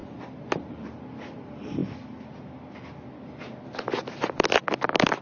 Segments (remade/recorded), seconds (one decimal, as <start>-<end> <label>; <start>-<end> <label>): 0.0-5.2 recorded